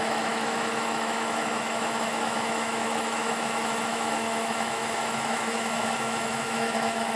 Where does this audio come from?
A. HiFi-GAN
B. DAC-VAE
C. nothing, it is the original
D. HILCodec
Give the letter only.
B